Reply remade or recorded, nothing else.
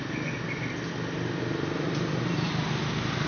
recorded